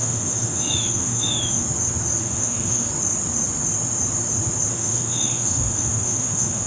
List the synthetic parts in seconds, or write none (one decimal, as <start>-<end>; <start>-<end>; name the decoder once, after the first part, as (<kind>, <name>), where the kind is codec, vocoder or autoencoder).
0.0-1.6 (autoencoder, DAC-VAE); 2.2-2.9; 4.7-6.7